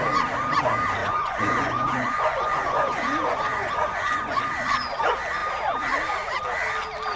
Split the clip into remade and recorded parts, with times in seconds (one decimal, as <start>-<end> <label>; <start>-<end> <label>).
0.0-1.0 recorded; 1.0-4.5 remade; 4.5-7.2 recorded